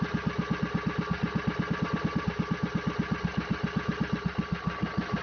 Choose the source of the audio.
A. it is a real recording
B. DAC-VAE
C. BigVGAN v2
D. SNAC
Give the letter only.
A